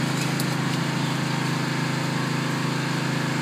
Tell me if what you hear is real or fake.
real